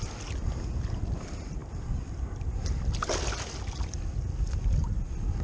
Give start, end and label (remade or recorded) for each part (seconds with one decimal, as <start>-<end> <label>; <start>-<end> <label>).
0.0-5.4 recorded